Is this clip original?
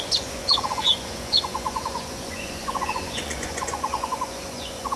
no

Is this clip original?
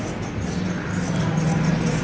yes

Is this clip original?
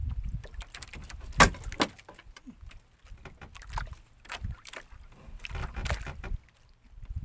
yes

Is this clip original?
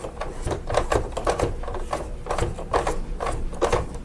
yes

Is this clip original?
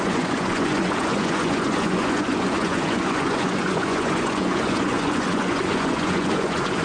no